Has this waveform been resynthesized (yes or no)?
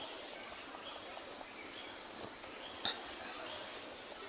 no